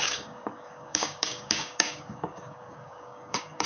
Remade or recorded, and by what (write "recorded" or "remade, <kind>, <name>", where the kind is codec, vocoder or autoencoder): remade, codec, DAC